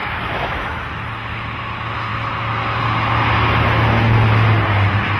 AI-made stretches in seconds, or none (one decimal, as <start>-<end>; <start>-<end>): 0.0-0.9